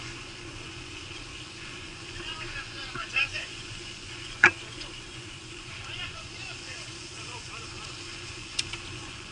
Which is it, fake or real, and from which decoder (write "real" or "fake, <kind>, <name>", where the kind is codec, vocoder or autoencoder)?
fake, vocoder, Vocos